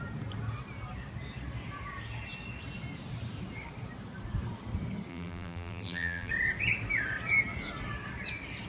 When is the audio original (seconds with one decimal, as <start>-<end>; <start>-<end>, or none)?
0.0-5.1; 6.3-8.7